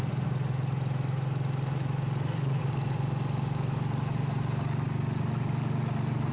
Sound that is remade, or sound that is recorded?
recorded